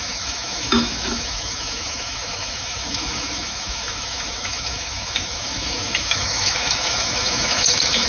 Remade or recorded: remade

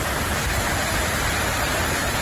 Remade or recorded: recorded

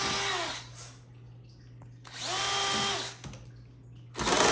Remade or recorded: recorded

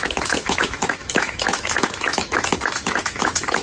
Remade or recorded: remade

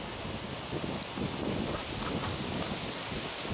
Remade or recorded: recorded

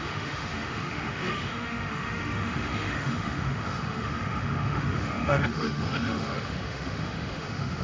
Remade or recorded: remade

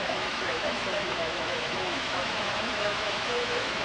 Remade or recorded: remade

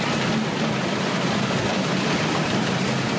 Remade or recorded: recorded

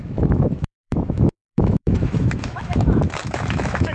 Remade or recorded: remade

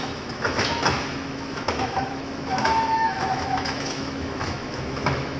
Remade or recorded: remade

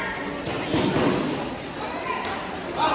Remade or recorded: recorded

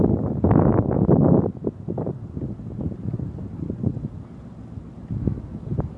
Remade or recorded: recorded